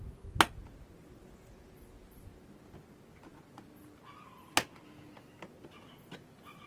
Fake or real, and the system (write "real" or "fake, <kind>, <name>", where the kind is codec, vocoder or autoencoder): real